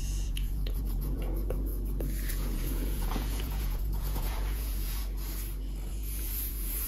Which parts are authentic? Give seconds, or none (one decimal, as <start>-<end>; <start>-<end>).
1.7-2.3; 5.0-5.9